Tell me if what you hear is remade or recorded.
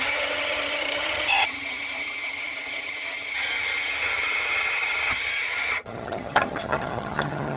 remade